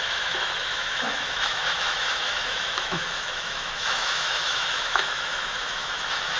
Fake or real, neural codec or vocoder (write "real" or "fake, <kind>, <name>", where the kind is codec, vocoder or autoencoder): fake, autoencoder, DAC-VAE